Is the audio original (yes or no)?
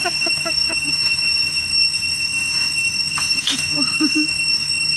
no